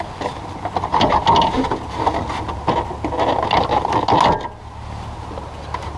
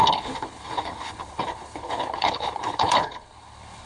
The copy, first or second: second